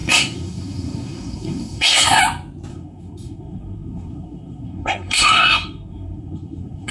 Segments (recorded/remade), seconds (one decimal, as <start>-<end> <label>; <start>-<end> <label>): 0.0-2.2 remade; 2.2-2.7 recorded; 2.7-6.9 remade